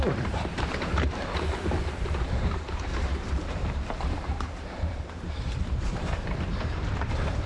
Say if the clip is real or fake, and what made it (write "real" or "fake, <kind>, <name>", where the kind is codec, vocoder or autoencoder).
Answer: fake, vocoder, BigVGAN v2